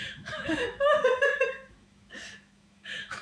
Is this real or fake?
fake